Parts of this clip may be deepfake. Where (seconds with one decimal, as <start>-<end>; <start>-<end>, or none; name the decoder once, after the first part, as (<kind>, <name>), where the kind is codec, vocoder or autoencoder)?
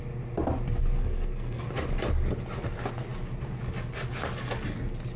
1.0-1.6 (codec, SNAC)